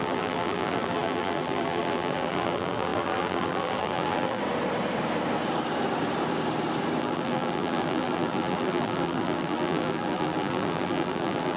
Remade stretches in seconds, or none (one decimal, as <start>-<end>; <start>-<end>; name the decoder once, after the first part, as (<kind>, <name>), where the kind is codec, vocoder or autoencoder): 0.0-4.4 (vocoder, BigVGAN v2); 7.0-11.6